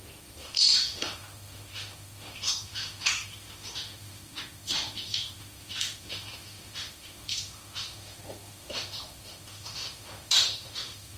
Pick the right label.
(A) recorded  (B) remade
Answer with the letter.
B